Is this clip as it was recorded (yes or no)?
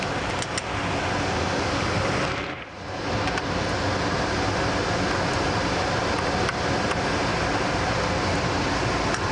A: yes